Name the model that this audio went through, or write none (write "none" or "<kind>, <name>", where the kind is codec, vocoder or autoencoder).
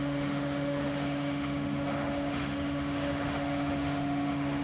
autoencoder, DAC-VAE